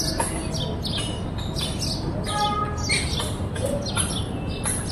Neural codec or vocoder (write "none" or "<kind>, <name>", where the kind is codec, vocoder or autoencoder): none